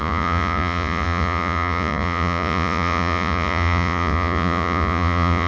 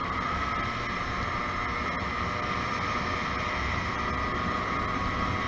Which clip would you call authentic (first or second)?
second